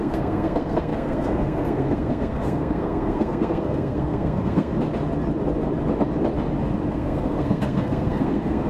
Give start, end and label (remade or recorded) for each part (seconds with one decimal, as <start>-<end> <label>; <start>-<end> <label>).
0.0-4.7 remade; 4.7-6.9 recorded; 6.9-8.7 remade